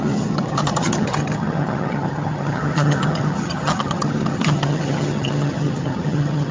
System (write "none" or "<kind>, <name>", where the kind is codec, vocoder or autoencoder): vocoder, HiFi-GAN